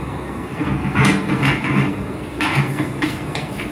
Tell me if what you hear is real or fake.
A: fake